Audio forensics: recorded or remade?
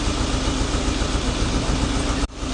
recorded